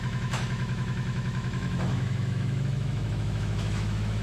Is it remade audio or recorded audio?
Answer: remade